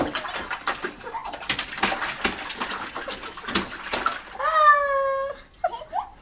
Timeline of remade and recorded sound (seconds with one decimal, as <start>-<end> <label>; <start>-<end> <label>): 0.0-6.2 recorded

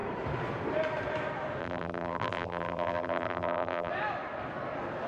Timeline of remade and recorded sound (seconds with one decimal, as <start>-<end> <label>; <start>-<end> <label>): 0.0-1.6 recorded; 1.6-3.9 remade; 3.9-5.1 recorded

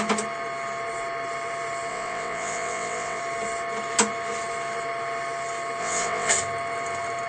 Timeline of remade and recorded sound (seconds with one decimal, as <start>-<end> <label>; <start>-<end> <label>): 0.0-1.9 recorded; 1.9-3.2 remade; 3.2-5.8 recorded; 5.8-6.3 remade; 6.3-7.3 recorded

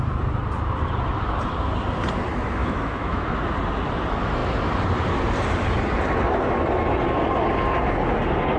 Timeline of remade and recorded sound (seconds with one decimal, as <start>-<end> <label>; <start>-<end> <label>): 0.0-2.6 recorded; 2.6-3.4 remade; 3.4-8.6 recorded

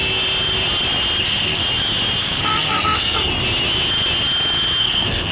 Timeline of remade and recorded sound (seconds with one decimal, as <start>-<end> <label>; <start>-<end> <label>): 0.0-1.2 recorded; 1.2-1.6 remade; 1.6-2.2 recorded; 2.2-3.3 remade; 3.3-4.8 recorded; 4.8-5.3 remade

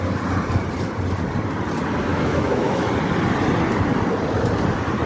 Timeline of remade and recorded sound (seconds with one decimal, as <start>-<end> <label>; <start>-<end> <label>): 0.0-2.1 recorded; 2.1-2.9 remade; 2.9-5.1 recorded